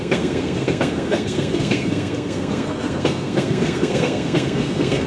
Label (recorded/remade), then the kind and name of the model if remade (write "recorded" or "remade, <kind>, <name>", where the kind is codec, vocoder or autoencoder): remade, codec, SNAC